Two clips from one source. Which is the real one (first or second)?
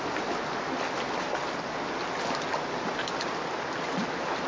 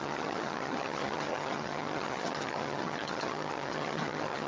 first